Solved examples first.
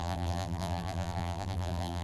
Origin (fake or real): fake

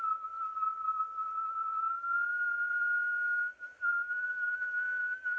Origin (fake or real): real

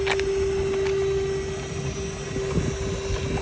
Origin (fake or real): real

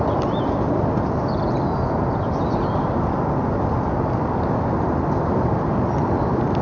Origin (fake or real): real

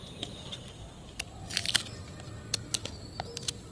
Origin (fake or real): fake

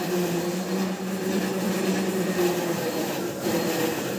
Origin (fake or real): fake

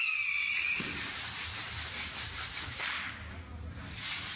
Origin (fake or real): real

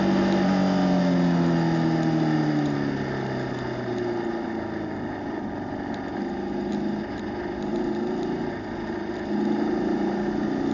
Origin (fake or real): real